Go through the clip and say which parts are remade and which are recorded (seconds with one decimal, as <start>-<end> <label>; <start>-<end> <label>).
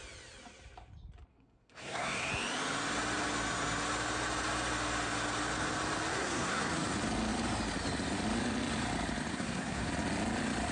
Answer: 0.0-1.3 recorded; 1.3-2.3 remade; 2.3-6.1 recorded; 6.1-6.7 remade; 6.7-9.3 recorded; 9.3-9.9 remade; 9.9-10.7 recorded